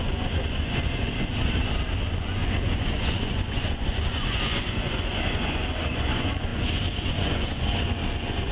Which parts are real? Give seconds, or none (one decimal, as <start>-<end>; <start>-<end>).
1.3-2.2